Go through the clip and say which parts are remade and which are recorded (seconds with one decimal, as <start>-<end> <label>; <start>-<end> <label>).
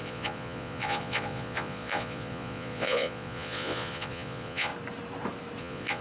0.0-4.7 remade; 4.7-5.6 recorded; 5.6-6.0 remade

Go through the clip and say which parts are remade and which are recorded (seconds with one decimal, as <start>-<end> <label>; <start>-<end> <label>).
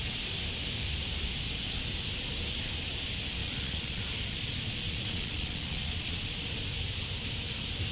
0.0-3.4 recorded; 3.4-4.0 remade; 4.0-4.7 recorded; 4.7-6.2 remade; 6.2-7.9 recorded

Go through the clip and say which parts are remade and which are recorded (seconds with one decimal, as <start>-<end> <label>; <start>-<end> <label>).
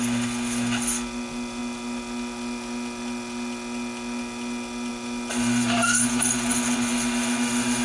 0.0-7.8 recorded